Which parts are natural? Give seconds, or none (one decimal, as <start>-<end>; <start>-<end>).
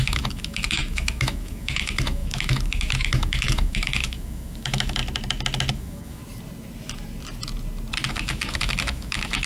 5.0-5.7; 6.2-8.1